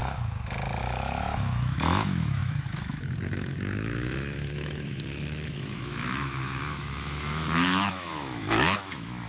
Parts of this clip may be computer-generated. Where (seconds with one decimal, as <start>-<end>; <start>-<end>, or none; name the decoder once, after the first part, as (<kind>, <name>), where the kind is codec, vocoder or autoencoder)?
0.8-9.3 (autoencoder, DAC-VAE)